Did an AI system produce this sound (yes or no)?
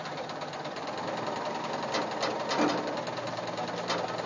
no